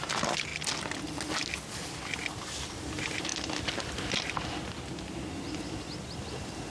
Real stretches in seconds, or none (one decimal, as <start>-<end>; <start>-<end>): 0.5-2.7; 3.3-6.3